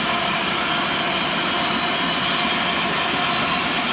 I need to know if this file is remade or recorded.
recorded